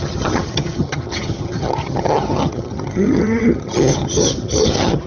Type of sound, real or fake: fake